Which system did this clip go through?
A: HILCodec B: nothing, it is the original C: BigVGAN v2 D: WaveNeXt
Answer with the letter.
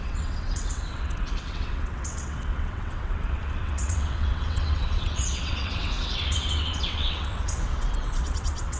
D